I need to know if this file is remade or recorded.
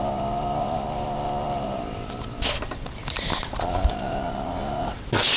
recorded